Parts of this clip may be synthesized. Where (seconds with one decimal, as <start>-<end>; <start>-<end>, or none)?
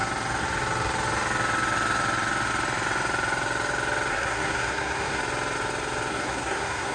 4.1-5.2; 6.1-6.9